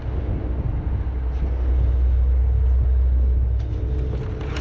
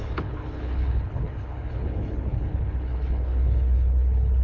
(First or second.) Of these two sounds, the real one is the first